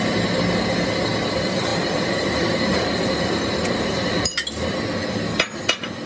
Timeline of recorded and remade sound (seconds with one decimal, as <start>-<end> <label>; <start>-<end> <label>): 0.0-1.7 recorded; 1.7-4.7 remade; 4.7-6.1 recorded